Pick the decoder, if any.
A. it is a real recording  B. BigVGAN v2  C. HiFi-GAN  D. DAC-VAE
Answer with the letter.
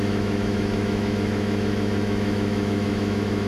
D